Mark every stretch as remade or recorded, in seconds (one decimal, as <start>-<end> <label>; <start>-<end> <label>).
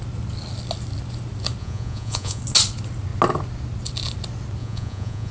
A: 0.0-1.6 recorded; 1.6-2.4 remade; 2.4-4.6 recorded; 4.6-5.3 remade